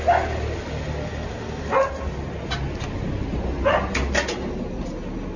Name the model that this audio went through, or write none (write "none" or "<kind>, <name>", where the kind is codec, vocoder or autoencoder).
none